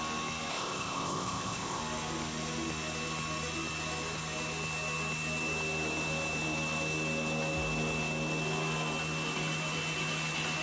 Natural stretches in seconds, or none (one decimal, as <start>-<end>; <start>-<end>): 0.0-0.5; 1.8-10.6

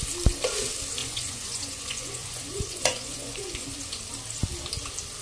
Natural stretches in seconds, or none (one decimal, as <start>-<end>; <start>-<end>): 0.0-1.0; 4.0-5.2

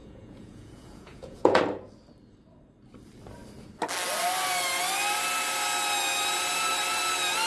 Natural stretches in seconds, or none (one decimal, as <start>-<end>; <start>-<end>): 1.6-7.5

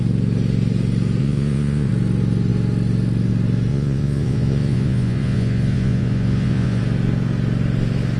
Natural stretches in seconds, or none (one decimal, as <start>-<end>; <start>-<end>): 0.0-1.2; 1.9-3.7; 6.8-8.2

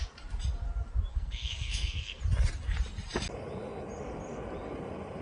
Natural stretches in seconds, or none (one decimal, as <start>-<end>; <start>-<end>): 0.0-1.1; 2.2-5.2

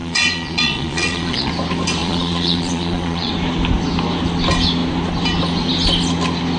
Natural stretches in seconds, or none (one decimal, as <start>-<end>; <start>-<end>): 1.5-2.0; 3.3-6.6

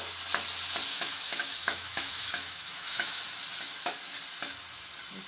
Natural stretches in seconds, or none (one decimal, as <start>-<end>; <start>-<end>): 0.0-0.9; 3.2-5.3